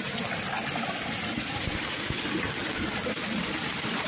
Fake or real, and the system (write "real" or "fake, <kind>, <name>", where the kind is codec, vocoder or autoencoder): real